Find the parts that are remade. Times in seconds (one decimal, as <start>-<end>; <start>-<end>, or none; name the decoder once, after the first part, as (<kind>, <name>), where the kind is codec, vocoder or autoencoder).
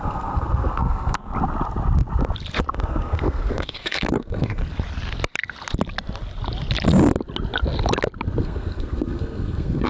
0.0-1.3 (codec, SNAC); 2.7-4.6; 8.4-9.9